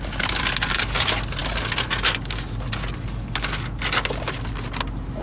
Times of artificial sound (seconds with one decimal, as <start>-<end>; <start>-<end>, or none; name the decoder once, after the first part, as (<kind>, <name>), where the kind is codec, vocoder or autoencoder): none